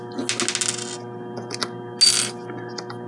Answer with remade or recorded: recorded